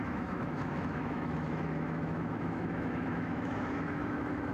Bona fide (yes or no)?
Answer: no